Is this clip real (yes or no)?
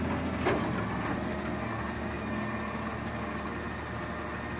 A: yes